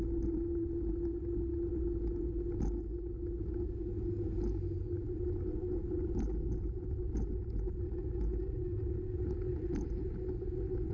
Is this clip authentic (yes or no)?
yes